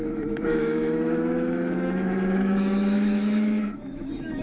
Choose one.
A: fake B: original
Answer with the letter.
A